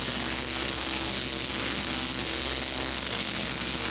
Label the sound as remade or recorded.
remade